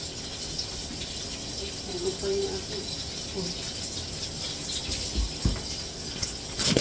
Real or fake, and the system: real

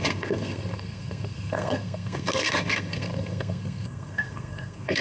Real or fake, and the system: fake, codec, SNAC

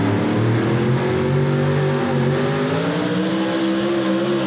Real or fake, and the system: real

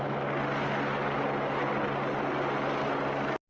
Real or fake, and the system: real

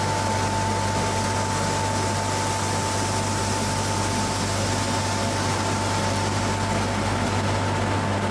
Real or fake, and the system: real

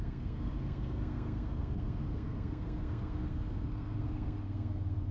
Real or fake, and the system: fake, codec, SNAC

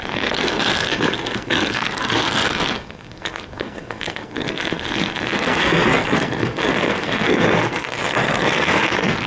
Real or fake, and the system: fake, codec, SNAC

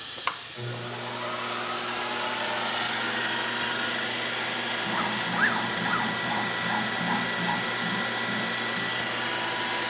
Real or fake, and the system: real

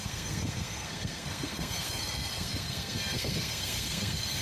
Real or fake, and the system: fake, codec, SNAC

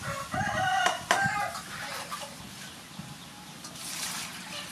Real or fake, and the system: real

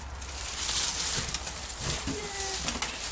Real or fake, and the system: real